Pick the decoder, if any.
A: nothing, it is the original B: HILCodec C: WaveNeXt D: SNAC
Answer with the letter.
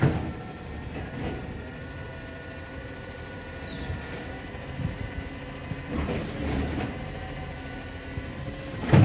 A